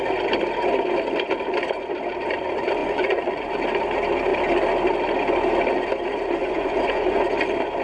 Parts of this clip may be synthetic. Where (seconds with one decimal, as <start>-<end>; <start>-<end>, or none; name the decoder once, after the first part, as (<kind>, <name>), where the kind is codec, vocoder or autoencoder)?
2.8-3.6 (vocoder, Vocos); 6.4-7.2